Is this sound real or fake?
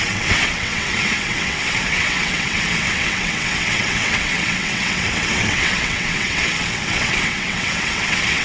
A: fake